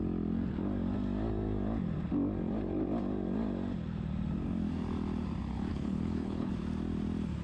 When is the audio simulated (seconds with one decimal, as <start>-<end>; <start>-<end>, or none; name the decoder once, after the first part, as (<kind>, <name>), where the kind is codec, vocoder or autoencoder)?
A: 5.7-6.5 (codec, HILCodec)